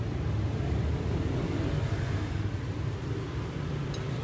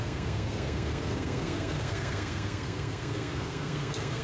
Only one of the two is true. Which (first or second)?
first